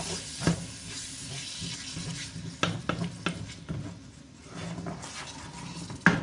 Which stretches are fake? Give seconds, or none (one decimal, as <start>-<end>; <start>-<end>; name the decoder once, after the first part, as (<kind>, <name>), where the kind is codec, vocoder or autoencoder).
none